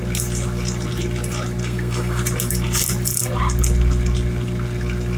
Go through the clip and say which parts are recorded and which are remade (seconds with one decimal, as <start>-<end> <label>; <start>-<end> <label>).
0.0-1.6 recorded; 1.6-2.2 remade; 2.2-5.2 recorded